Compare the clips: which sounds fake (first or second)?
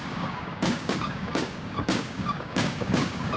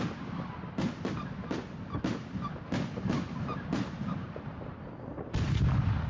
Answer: first